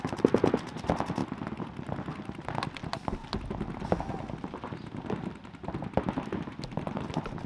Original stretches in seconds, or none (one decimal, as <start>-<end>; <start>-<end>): 0.0-7.5